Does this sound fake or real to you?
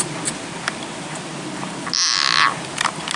real